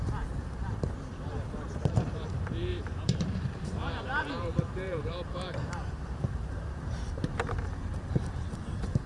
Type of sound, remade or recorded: remade